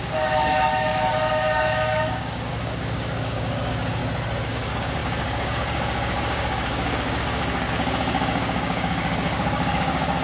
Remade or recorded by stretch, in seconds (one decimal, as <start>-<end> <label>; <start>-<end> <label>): 0.0-4.0 remade; 4.0-4.5 recorded; 4.5-10.2 remade